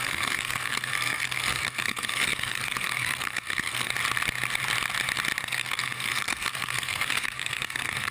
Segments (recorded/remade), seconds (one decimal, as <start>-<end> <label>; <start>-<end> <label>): 0.0-3.9 remade; 3.9-5.4 recorded; 5.4-8.1 remade